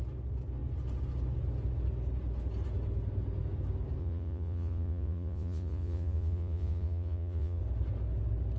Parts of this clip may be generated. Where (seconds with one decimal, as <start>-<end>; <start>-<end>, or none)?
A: 4.0-7.6